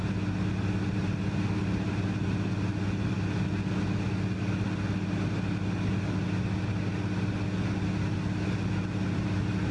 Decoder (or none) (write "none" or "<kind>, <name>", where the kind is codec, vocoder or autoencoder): none